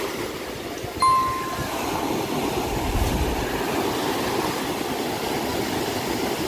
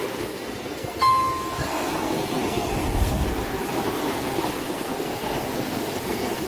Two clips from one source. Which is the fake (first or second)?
second